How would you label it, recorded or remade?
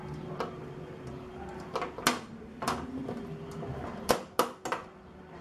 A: recorded